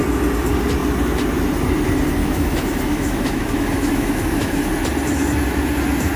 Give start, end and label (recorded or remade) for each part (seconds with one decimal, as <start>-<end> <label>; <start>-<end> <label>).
0.0-2.2 recorded; 2.2-4.7 remade; 4.7-6.2 recorded